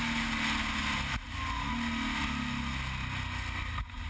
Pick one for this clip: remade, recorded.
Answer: recorded